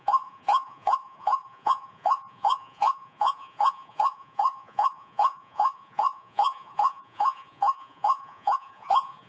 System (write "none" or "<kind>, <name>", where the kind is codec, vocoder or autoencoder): vocoder, Vocos